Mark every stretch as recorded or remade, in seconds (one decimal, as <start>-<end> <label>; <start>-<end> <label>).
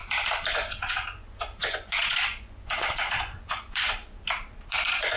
0.0-0.5 recorded; 0.5-4.0 remade; 4.0-4.7 recorded; 4.7-5.2 remade